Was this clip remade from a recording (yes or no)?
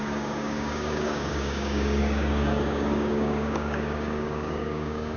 yes